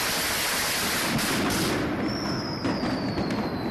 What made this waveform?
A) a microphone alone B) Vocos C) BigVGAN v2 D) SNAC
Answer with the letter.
A